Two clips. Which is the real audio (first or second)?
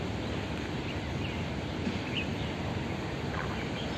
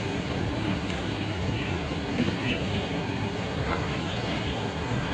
first